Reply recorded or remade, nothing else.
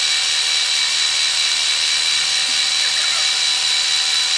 recorded